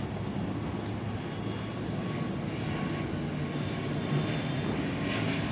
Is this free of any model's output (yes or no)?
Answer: yes